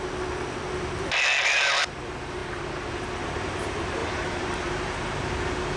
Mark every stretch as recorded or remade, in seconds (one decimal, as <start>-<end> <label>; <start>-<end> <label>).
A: 0.0-4.0 recorded; 4.0-4.7 remade; 4.7-5.8 recorded